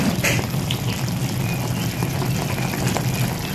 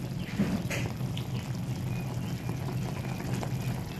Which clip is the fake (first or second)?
first